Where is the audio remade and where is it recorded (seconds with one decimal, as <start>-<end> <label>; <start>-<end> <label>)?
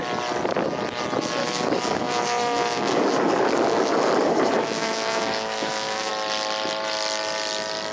0.0-1.4 recorded; 1.4-6.1 remade; 6.1-7.9 recorded